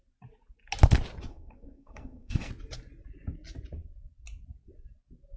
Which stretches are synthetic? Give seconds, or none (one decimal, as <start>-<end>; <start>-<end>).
1.3-2.5